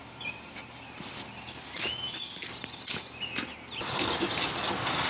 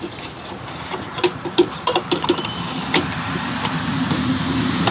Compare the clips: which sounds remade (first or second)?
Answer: second